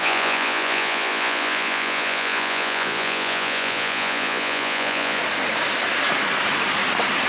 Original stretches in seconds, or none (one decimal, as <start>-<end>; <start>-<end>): 5.2-7.3

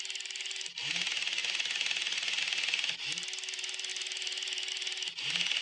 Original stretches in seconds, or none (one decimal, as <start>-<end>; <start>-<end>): 0.0-5.6